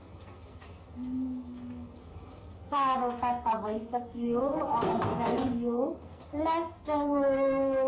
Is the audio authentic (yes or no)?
no